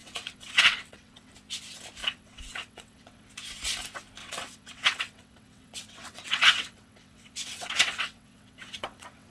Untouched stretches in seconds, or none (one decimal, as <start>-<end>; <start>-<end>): 1.3-2.0; 3.3-4.2